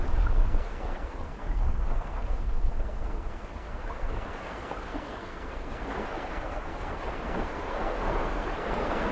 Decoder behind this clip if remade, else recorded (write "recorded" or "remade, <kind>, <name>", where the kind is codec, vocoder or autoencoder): remade, codec, SNAC